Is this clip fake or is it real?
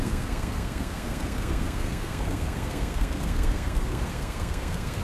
fake